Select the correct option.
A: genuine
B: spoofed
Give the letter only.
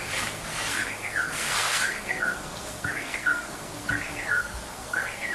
B